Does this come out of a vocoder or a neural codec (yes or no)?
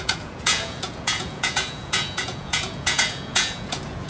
yes